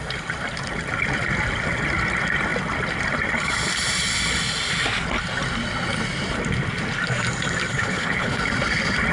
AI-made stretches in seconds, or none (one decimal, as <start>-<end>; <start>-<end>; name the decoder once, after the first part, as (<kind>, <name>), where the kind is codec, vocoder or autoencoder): 7.7-8.4 (codec, HILCodec)